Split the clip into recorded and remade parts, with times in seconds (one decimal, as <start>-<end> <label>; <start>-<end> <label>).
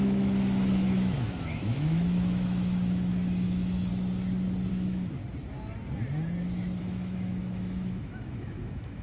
0.0-3.9 remade; 3.9-4.7 recorded; 4.7-5.2 remade; 5.2-6.8 recorded; 6.8-9.0 remade